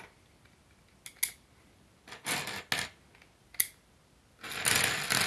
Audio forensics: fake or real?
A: real